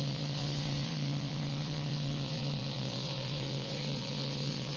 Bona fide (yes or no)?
no